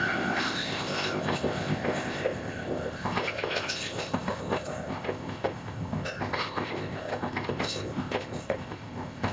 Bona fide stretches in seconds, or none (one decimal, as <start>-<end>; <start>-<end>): none